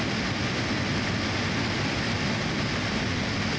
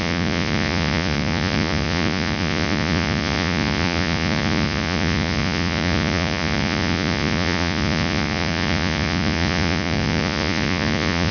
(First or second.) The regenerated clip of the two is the second